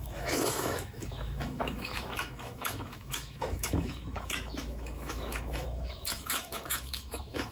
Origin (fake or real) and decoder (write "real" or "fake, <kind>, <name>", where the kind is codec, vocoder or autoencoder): fake, autoencoder, DAC-VAE